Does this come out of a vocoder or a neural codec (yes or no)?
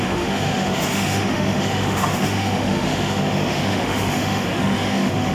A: yes